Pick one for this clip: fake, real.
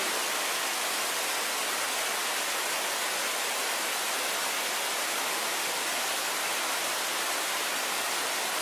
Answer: real